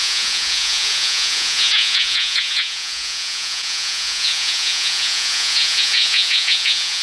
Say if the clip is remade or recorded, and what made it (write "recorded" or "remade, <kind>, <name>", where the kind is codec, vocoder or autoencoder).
remade, vocoder, Vocos